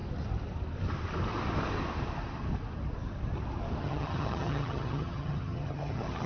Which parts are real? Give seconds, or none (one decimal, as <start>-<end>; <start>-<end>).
0.0-3.8